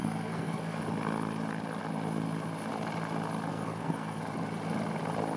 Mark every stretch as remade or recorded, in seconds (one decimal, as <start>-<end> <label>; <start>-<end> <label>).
0.0-0.8 remade; 0.8-3.5 recorded; 3.5-4.2 remade; 4.2-5.4 recorded